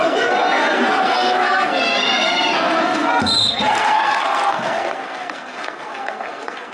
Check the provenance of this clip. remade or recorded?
remade